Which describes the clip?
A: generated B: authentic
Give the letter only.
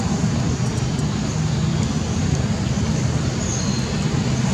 B